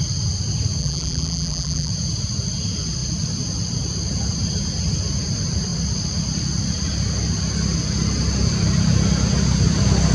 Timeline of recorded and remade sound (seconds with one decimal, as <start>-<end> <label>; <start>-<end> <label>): 0.0-0.8 recorded; 0.8-1.9 remade; 1.9-10.1 recorded